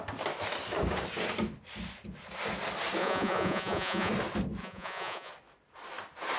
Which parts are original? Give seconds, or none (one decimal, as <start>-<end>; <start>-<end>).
0.0-3.0; 4.1-4.6; 5.3-6.4